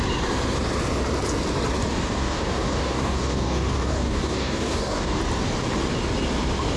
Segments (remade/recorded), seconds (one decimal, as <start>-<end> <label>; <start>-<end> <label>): 0.0-1.9 recorded; 1.9-5.2 remade; 5.2-6.8 recorded